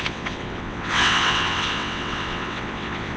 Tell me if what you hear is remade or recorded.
remade